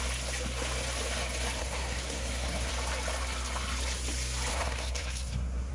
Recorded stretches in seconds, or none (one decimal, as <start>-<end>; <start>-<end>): 0.0-1.6; 2.7-4.5